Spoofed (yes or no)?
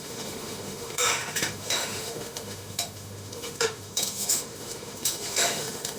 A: yes